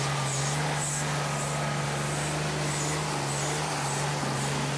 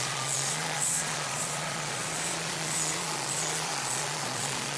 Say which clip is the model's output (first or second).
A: second